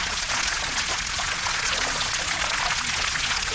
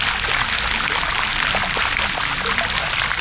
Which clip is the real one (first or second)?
second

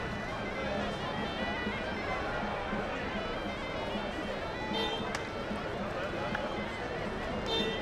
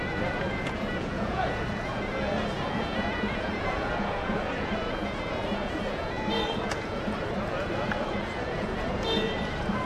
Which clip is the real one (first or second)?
first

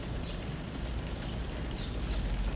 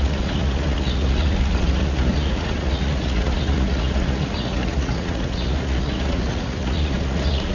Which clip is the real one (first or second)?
first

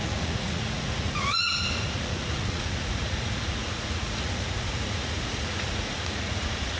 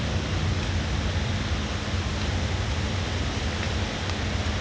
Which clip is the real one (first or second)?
second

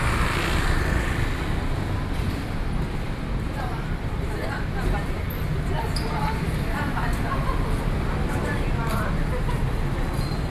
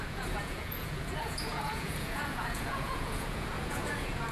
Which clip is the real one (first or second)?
first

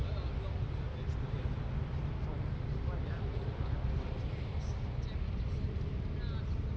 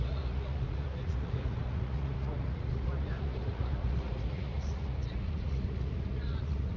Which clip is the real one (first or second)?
first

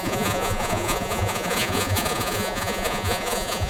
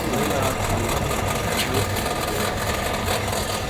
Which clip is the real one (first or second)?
second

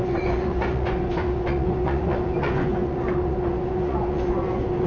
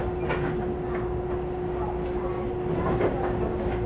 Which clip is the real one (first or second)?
second